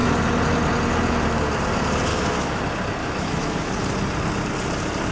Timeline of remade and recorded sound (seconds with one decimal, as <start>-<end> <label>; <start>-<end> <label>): 0.0-2.1 recorded; 2.1-2.6 remade; 2.6-3.0 recorded; 3.0-3.7 remade; 3.7-5.1 recorded

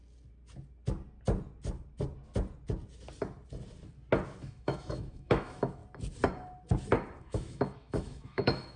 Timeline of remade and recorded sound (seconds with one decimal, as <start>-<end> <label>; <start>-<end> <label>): 0.0-4.4 recorded; 4.4-5.8 remade; 5.8-7.2 recorded; 7.2-8.8 remade

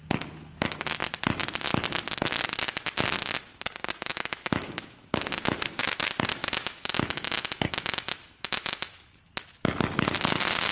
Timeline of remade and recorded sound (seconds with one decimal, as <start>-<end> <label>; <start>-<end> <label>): 0.0-4.1 recorded; 4.1-5.2 remade; 5.2-6.4 recorded; 6.4-9.2 remade; 9.2-10.7 recorded

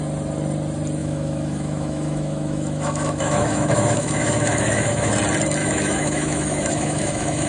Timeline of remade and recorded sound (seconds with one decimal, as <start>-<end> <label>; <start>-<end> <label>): 0.0-1.0 recorded; 1.0-5.1 remade; 5.1-5.6 recorded; 5.6-7.5 remade

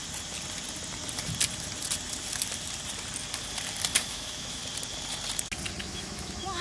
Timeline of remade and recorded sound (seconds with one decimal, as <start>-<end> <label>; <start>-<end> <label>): 0.0-4.0 recorded; 4.0-4.6 remade; 4.6-5.8 recorded; 5.8-6.6 remade

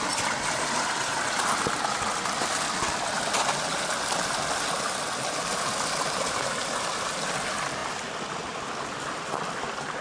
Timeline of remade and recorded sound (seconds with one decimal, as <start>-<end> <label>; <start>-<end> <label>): 0.0-10.0 recorded

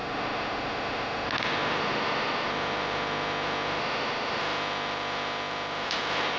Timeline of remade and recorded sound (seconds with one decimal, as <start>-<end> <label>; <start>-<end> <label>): 0.0-1.3 remade; 1.3-1.8 recorded; 1.8-2.5 remade; 2.5-3.8 recorded; 3.8-4.4 remade; 4.4-6.4 recorded